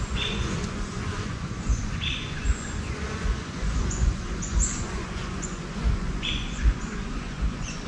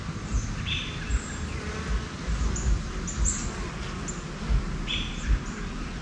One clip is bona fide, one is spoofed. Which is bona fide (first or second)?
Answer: second